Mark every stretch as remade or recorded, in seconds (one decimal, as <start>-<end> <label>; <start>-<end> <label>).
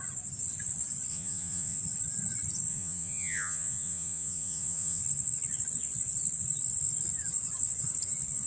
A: 0.0-1.1 recorded; 1.1-1.8 remade; 1.8-2.7 recorded; 2.7-5.0 remade; 5.0-8.5 recorded